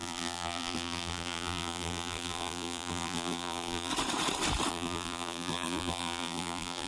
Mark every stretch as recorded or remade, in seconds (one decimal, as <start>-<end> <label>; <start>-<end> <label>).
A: 0.0-3.9 remade; 3.9-4.7 recorded; 4.7-6.9 remade